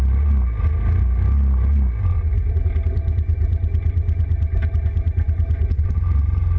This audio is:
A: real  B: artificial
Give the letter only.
A